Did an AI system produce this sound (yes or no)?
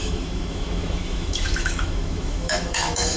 yes